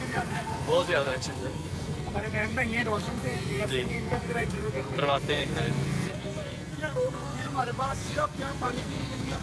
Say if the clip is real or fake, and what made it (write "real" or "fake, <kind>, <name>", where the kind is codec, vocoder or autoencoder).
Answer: fake, codec, SNAC